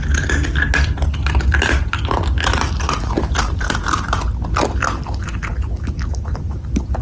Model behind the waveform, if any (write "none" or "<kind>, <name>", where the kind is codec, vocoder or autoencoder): none